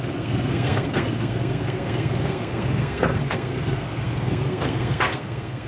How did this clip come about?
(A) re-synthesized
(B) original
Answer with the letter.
A